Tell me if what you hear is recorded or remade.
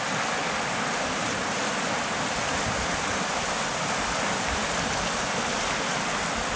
recorded